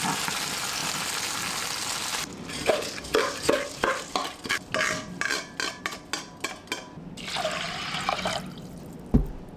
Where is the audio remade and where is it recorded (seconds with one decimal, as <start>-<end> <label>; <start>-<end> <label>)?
0.0-9.6 recorded